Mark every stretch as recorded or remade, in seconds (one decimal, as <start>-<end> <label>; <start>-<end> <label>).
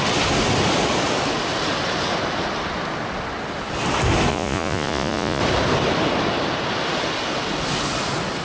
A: 0.0-4.3 recorded; 4.3-5.4 remade; 5.4-8.4 recorded